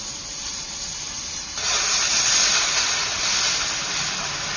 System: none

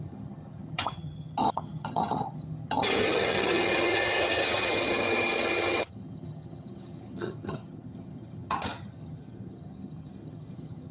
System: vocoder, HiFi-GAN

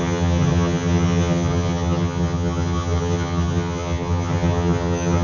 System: vocoder, HiFi-GAN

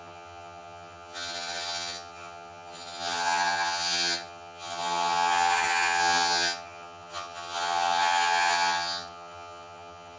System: vocoder, HiFi-GAN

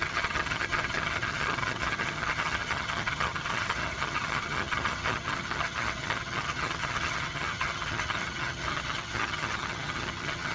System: vocoder, HiFi-GAN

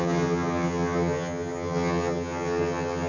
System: vocoder, HiFi-GAN